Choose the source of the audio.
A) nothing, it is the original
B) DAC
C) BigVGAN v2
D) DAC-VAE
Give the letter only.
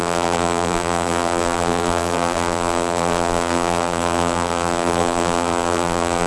C